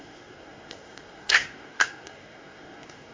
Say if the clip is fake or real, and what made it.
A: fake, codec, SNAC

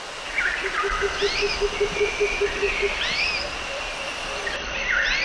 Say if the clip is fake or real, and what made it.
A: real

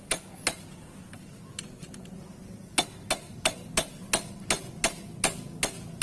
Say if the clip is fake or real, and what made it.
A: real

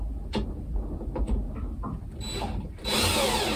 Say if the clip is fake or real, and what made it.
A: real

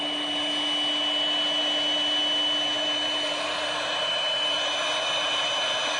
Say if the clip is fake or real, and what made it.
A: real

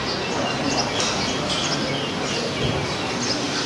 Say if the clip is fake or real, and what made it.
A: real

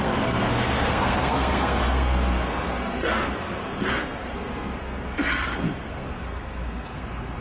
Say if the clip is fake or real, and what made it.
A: fake, codec, SNAC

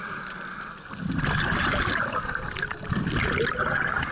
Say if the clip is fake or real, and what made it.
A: real